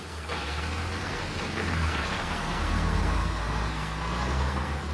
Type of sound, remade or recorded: remade